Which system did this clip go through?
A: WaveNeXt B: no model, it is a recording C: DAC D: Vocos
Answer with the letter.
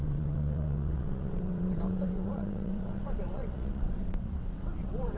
A